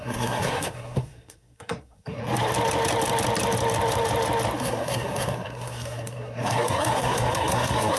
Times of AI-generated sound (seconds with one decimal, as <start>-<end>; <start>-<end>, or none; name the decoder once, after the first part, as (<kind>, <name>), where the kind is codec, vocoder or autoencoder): 0.0-2.2 (codec, SNAC); 4.6-8.0